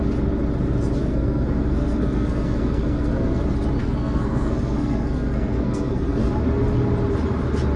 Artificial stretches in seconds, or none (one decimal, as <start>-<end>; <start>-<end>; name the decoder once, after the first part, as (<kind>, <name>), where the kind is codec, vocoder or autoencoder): 1.0-3.4 (codec, SNAC); 3.8-6.2